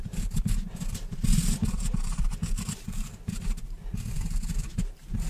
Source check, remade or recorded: remade